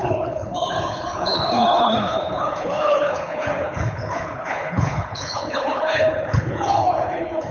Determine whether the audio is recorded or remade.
remade